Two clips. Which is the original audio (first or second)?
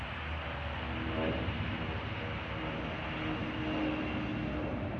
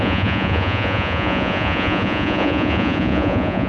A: first